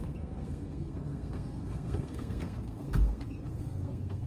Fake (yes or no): yes